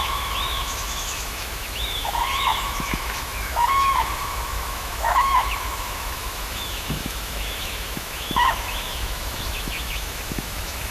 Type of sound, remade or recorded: remade